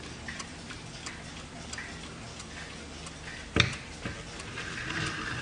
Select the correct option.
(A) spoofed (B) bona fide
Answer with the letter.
B